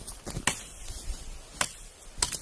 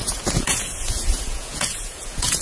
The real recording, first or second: first